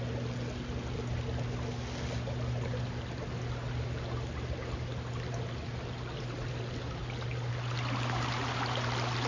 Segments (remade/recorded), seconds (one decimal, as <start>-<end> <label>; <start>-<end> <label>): 0.0-9.3 recorded